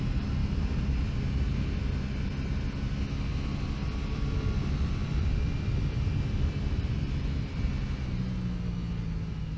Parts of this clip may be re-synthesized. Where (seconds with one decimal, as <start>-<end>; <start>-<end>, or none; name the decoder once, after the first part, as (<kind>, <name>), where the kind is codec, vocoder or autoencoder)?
3.8-7.7 (vocoder, BigVGAN v2)